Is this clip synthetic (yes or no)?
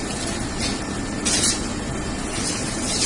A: no